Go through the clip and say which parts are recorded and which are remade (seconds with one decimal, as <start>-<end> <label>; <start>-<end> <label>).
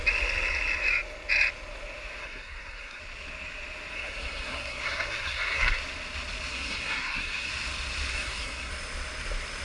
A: 0.0-2.2 recorded; 2.2-3.0 remade; 3.0-3.9 recorded; 3.9-5.8 remade; 5.8-6.5 recorded; 6.5-7.5 remade; 7.5-8.1 recorded; 8.1-8.7 remade; 8.7-9.6 recorded